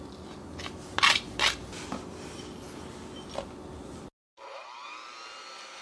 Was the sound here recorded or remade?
recorded